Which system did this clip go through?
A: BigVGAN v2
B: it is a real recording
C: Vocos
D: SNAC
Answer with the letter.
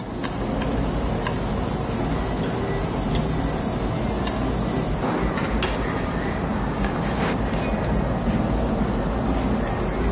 B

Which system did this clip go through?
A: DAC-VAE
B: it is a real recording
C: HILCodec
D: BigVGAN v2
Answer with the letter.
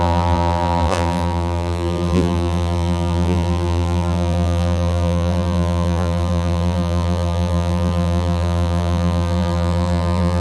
D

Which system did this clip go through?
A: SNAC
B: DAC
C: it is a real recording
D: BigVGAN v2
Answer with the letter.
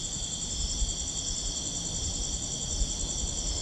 C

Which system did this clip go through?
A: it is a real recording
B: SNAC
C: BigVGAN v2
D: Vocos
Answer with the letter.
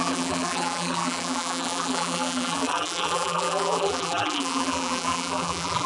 C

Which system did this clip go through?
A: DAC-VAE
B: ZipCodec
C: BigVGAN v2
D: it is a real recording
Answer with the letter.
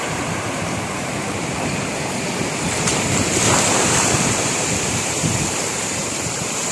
C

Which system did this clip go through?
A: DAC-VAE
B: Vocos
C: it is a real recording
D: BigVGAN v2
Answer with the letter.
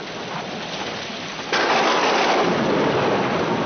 C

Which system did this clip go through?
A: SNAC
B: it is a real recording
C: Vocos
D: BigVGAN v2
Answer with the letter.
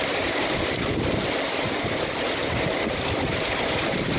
D